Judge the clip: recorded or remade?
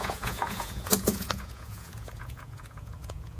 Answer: remade